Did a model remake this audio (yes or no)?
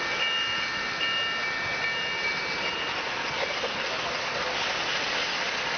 no